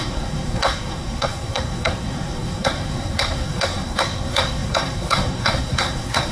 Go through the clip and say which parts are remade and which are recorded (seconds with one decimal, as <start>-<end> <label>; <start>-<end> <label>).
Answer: 0.0-6.3 remade